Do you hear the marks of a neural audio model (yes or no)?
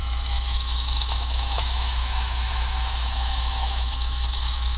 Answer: yes